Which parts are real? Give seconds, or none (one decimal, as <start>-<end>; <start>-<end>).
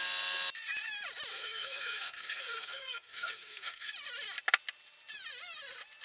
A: 0.0-1.3; 3.9-6.0